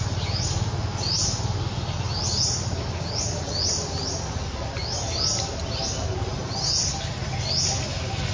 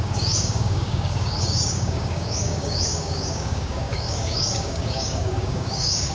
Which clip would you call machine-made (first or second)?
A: second